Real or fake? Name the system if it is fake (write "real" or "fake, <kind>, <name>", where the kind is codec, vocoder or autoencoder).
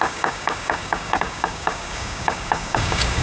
fake, codec, DAC